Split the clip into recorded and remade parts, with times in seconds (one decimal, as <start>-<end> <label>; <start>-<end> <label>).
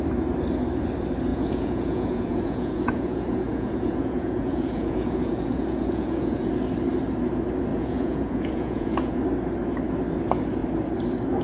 0.0-1.3 recorded; 1.3-6.5 remade; 6.5-7.7 recorded; 7.7-9.2 remade; 9.2-11.4 recorded